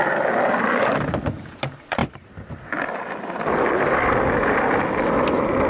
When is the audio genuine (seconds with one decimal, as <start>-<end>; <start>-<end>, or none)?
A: 0.0-5.7